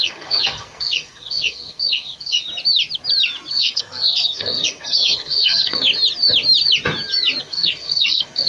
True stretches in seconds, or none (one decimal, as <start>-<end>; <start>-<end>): 2.4-3.5; 5.9-7.4